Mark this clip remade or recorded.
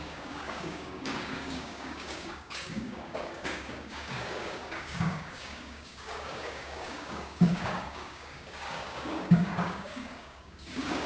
remade